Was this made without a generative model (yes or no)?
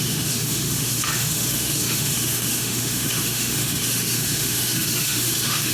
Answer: no